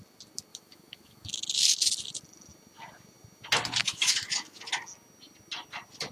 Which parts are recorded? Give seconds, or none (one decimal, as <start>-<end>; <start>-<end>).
0.0-0.5; 1.4-3.8; 4.6-6.1